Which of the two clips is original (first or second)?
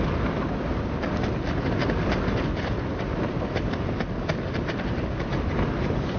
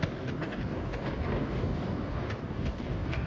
first